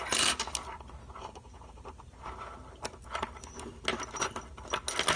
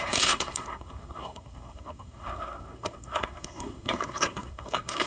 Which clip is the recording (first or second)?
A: first